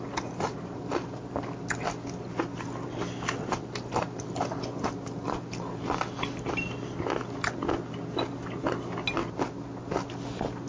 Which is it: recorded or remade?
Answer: recorded